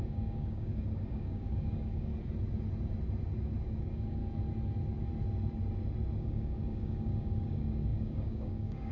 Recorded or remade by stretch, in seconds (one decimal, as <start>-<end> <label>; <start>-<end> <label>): 0.0-2.1 remade; 2.1-3.8 recorded; 3.8-4.2 remade; 4.2-6.2 recorded; 6.2-8.9 remade